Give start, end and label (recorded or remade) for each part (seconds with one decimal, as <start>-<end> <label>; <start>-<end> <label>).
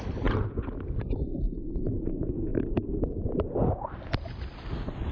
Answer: 0.0-5.1 recorded